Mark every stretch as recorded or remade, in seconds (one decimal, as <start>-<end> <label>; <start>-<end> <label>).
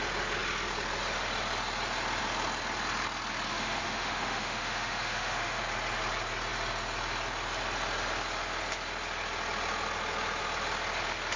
0.0-3.5 recorded; 3.5-5.6 remade; 5.6-11.4 recorded